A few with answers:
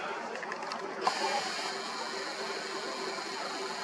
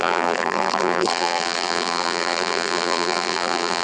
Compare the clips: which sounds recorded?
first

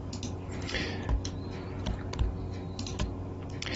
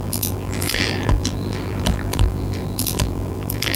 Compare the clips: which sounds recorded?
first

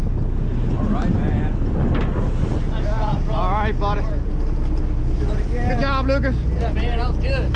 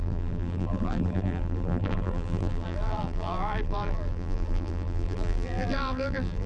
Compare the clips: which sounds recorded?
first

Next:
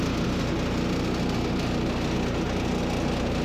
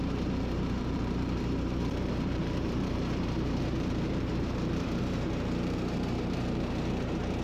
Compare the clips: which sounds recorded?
first